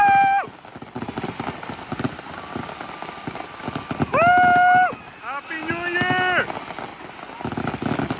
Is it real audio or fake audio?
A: real